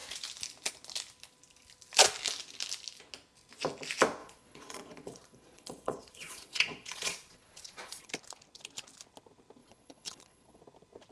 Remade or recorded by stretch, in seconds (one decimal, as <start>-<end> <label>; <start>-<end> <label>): 0.0-4.2 recorded; 4.2-8.1 remade; 8.1-9.6 recorded; 9.6-10.6 remade; 10.6-11.1 recorded